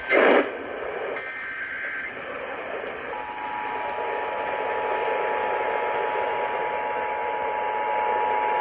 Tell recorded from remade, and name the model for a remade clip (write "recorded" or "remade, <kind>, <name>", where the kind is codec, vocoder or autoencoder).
recorded